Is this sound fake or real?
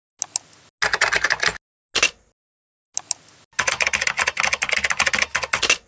real